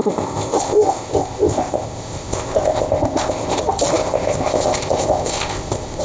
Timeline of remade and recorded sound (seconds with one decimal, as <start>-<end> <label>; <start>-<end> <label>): 0.0-3.6 remade; 3.6-4.0 recorded; 4.0-6.0 remade